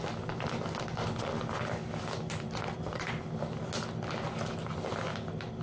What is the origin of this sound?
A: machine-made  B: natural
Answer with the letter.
B